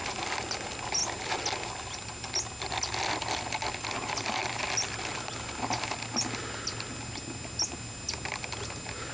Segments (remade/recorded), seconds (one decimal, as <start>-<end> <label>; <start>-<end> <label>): 0.0-9.1 recorded